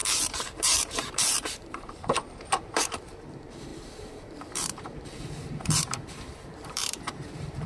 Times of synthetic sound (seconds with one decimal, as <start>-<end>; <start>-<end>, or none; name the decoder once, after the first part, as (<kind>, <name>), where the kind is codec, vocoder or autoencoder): 0.0-7.7 (vocoder, BigVGAN v2)